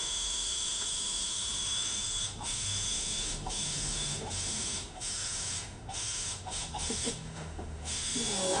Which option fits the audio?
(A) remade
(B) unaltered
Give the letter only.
A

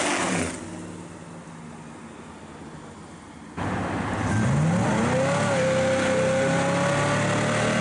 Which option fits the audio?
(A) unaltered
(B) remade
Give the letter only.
A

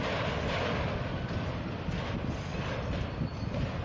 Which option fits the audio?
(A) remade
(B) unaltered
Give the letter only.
A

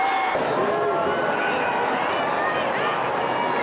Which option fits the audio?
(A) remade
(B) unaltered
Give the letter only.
B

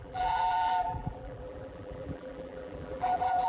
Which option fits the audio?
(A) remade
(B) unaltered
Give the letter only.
A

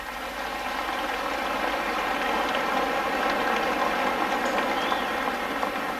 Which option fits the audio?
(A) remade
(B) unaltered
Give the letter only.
B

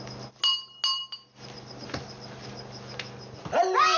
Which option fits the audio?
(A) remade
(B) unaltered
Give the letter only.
B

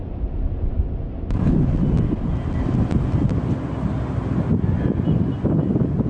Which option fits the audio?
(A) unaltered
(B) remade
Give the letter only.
A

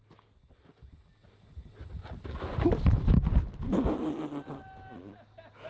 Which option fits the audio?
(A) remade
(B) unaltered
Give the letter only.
B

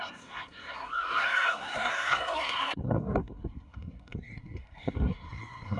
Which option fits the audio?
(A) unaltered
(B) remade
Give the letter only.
B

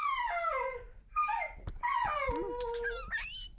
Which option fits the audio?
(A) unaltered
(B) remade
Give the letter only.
A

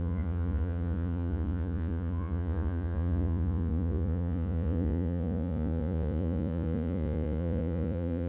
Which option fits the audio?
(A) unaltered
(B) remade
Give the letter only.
B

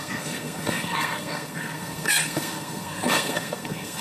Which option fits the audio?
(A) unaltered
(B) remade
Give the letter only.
B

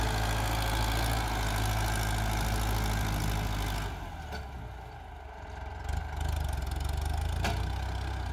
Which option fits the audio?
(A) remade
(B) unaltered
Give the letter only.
B